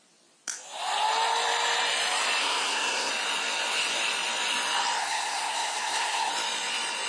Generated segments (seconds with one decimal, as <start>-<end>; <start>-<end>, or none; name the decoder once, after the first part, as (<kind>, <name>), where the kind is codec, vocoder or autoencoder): 2.4-3.1 (codec, SNAC); 5.0-6.3